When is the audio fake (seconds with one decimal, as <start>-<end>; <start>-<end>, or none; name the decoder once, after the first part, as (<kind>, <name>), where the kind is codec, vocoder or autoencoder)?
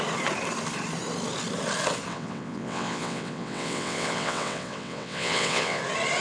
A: 2.1-5.8 (vocoder, WaveNeXt)